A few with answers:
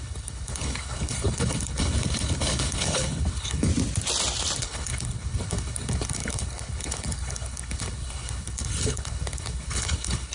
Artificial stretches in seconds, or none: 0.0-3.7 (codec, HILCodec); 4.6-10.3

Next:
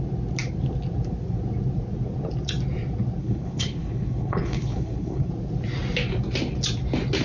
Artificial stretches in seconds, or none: 3.2-5.3 (codec, HILCodec)

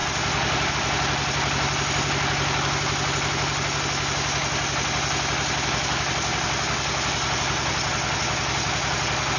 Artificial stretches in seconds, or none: none